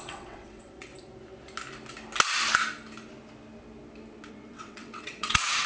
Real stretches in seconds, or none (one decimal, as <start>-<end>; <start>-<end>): 0.9-4.3